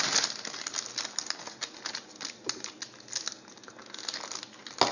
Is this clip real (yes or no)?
yes